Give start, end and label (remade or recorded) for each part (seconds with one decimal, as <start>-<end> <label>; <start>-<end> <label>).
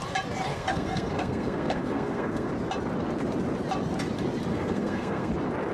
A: 0.0-0.5 recorded; 0.5-2.5 remade; 2.5-4.5 recorded; 4.5-5.3 remade; 5.3-5.7 recorded